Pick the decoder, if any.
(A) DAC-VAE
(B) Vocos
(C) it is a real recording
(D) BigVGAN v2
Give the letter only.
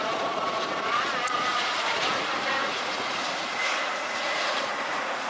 B